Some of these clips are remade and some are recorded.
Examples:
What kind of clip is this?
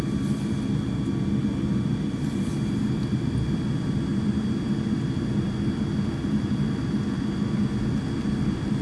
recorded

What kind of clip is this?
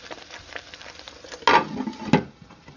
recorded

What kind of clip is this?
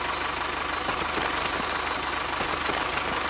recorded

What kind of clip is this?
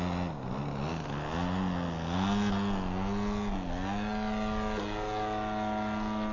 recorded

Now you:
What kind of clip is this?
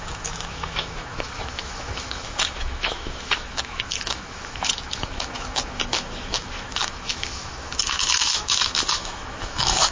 remade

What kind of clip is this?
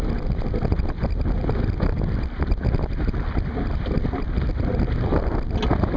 recorded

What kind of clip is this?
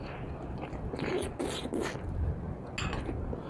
recorded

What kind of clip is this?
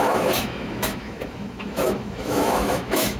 remade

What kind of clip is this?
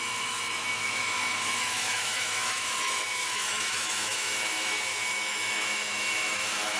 remade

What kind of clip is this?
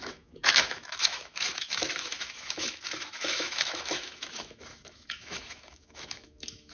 remade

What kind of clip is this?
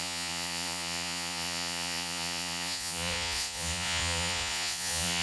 remade